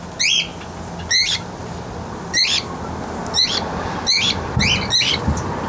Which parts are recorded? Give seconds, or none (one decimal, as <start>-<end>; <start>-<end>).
0.0-5.7